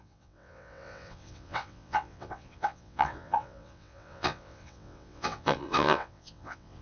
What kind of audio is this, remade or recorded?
remade